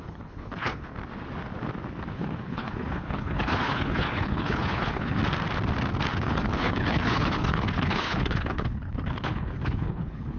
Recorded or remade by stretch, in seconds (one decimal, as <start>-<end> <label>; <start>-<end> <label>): 0.0-0.9 remade; 0.9-2.1 recorded; 2.1-5.2 remade; 5.2-6.2 recorded; 6.2-10.4 remade